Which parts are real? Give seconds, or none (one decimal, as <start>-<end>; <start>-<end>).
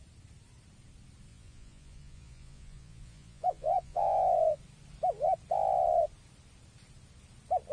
0.0-1.3; 4.6-7.7